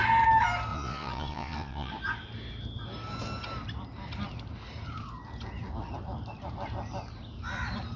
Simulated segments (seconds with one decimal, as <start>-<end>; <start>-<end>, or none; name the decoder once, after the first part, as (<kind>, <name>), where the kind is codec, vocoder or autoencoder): 0.7-1.9 (vocoder, Vocos)